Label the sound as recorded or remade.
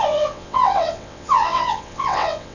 remade